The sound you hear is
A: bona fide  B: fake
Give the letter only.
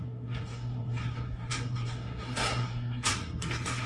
B